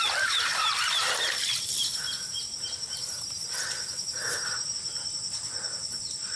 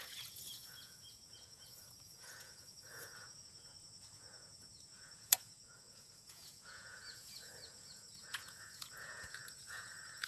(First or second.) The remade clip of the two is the second